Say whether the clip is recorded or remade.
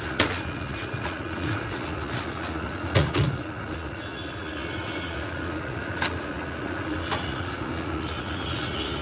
remade